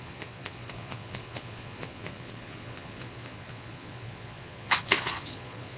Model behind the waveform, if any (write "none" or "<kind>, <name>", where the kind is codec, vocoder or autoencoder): vocoder, Vocos